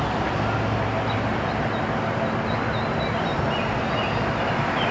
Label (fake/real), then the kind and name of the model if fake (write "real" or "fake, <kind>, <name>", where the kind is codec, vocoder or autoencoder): real